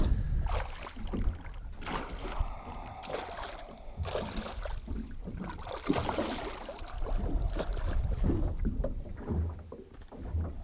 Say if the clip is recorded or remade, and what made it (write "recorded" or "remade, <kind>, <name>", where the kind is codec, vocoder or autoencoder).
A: recorded